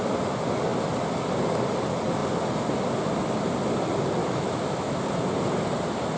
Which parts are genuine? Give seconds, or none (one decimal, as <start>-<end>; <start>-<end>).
0.0-4.2; 5.0-6.2